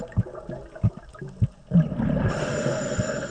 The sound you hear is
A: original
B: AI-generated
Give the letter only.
A